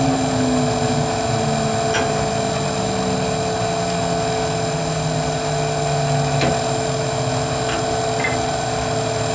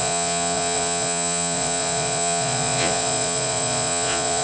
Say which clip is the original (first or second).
first